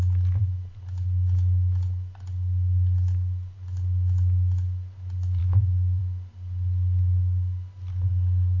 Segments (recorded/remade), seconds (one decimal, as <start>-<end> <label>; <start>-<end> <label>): 0.0-5.4 recorded; 5.4-6.0 remade; 6.0-8.6 recorded